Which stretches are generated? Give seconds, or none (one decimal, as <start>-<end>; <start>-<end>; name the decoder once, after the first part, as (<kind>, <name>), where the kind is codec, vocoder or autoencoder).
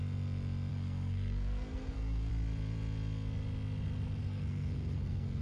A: 0.7-2.3 (codec, SNAC); 4.2-5.4